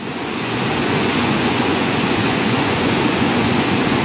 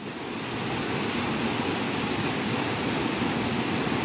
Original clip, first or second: second